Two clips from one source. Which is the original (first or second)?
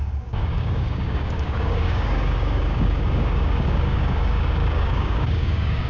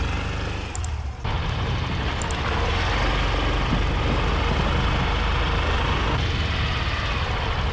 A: second